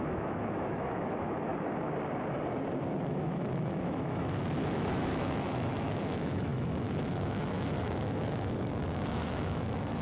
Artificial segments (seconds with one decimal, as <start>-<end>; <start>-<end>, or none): 0.0-1.5; 3.0-10.0

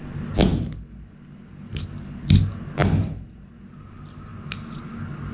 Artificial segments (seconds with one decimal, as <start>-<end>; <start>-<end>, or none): none

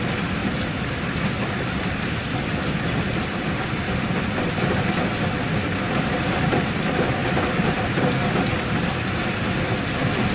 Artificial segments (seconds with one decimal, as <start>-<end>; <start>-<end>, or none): 0.4-4.9